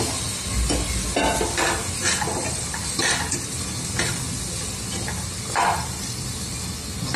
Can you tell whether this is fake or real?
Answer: real